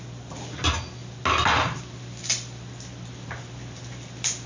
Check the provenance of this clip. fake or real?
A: real